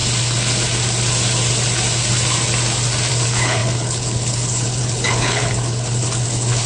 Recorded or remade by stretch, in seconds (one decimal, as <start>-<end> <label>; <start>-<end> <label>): 0.0-3.1 recorded; 3.1-6.7 remade